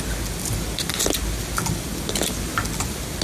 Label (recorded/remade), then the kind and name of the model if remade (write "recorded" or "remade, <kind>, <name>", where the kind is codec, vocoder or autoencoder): recorded